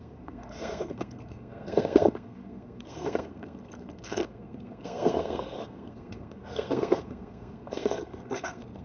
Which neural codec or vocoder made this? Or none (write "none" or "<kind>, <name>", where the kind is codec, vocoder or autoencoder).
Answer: codec, SNAC